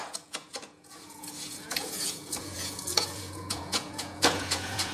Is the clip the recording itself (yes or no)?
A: no